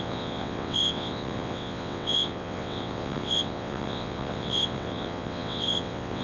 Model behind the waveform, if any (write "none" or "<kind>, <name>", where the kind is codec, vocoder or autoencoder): vocoder, WaveNeXt